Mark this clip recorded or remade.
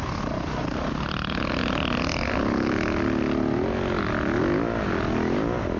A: recorded